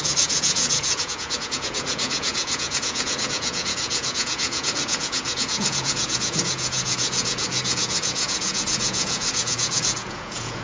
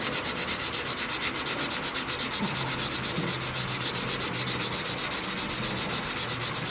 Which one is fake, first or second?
first